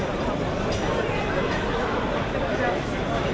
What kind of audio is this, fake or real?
real